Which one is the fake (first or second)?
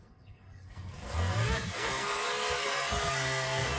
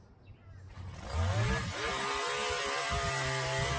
first